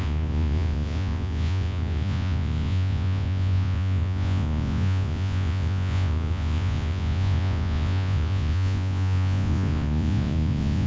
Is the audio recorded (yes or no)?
no